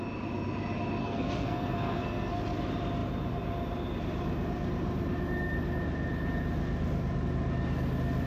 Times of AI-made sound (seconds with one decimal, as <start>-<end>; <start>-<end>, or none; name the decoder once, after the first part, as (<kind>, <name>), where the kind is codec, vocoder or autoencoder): 1.0-2.4 (codec, SNAC)